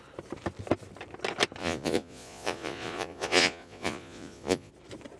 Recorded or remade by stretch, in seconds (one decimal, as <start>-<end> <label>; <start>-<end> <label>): 0.0-1.6 recorded; 1.6-4.7 remade; 4.7-5.2 recorded